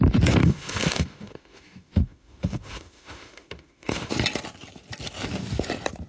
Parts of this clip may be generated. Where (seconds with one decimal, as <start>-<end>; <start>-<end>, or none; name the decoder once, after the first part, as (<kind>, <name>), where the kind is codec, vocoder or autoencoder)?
0.4-4.1 (autoencoder, DAC-VAE)